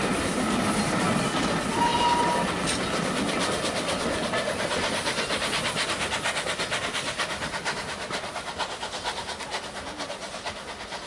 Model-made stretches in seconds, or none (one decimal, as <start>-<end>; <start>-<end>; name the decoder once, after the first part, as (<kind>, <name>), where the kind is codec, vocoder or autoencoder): none